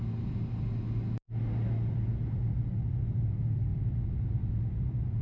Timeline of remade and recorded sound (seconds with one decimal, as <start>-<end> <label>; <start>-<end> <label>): 0.0-5.2 recorded